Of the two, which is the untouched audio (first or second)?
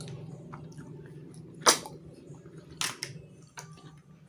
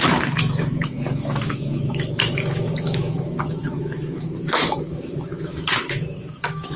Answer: first